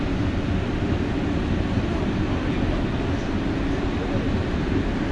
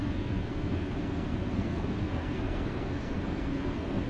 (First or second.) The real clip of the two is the first